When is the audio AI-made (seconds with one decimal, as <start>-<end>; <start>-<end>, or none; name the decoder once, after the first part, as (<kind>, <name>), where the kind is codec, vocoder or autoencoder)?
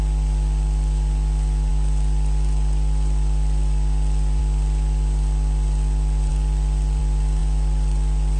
none